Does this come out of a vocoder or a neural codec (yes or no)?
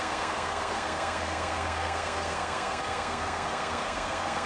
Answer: yes